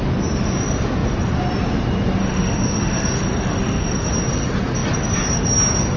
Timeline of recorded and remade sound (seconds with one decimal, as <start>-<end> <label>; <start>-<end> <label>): 0.0-2.2 recorded; 2.2-4.1 remade; 4.1-6.0 recorded